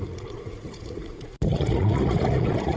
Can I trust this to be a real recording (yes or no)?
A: no